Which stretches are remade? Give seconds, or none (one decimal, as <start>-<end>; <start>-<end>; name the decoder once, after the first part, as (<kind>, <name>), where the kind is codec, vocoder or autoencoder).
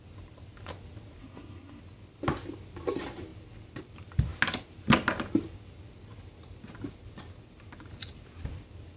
1.2-1.8 (codec, SNAC)